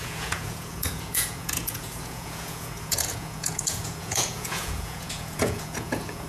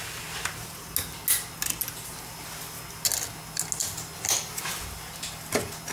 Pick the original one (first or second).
second